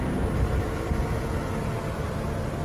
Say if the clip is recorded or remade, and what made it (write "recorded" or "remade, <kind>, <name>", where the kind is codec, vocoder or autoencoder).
recorded